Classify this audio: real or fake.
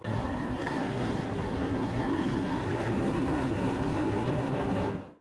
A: fake